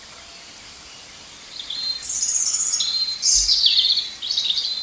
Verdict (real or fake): real